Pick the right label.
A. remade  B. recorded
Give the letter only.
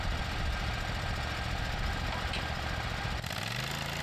B